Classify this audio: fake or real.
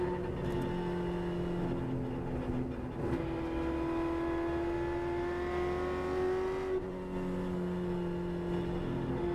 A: real